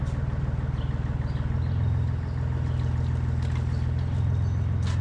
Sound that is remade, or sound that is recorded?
recorded